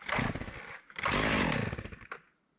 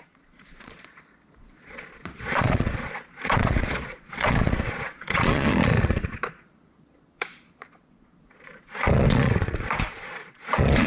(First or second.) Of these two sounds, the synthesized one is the second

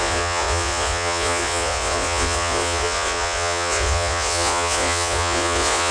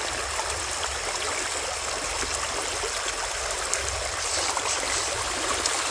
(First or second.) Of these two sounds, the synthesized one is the first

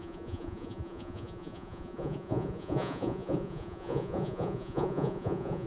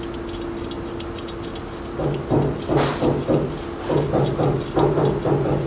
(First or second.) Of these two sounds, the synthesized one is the first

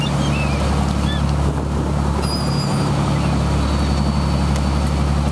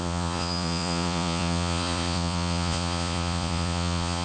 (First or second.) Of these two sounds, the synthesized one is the second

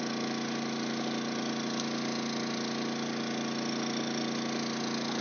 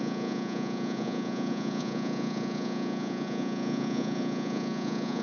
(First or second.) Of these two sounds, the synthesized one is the second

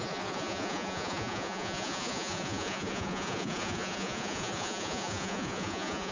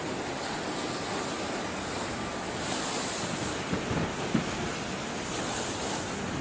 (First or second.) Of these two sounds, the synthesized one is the first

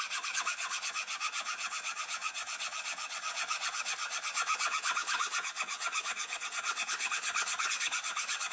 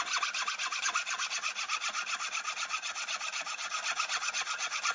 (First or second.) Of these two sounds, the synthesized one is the first